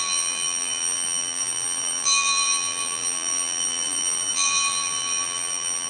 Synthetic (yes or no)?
yes